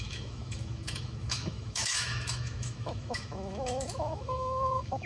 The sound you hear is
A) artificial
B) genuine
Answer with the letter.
A